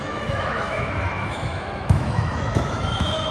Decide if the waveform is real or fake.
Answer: fake